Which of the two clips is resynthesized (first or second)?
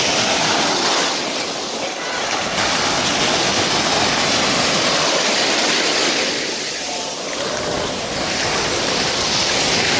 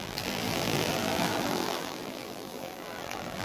second